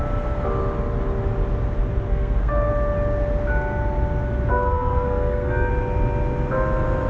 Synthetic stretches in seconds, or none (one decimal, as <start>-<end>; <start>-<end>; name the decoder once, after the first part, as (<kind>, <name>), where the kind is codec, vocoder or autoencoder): 2.1-2.7 (codec, SNAC); 4.5-5.7

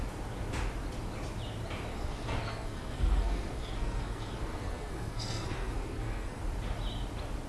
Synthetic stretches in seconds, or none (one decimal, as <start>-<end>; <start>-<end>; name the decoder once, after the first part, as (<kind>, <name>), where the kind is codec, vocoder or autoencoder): 1.9-6.4 (codec, SNAC)

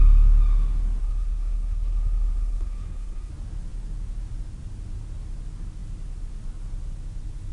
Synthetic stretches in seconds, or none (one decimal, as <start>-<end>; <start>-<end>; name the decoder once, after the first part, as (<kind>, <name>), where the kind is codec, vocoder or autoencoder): 1.0-3.3 (codec, SNAC)

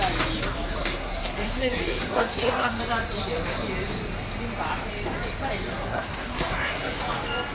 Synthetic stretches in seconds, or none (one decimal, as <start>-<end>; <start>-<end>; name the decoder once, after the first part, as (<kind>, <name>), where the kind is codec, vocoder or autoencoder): 0.8-2.8 (codec, SNAC); 5.7-7.0

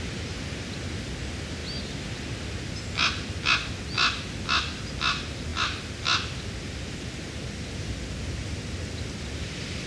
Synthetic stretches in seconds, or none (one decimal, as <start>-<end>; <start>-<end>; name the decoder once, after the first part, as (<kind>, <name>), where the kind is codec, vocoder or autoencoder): none

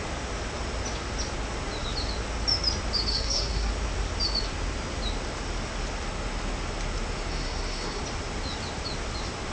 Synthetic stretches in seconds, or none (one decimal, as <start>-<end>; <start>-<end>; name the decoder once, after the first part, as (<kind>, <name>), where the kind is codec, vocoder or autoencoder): 3.1-3.7 (codec, SNAC); 7.3-8.0